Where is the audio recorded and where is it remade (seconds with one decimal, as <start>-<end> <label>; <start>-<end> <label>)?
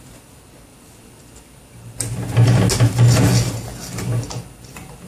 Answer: 0.0-5.1 recorded